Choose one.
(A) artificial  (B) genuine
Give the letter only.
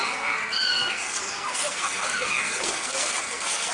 A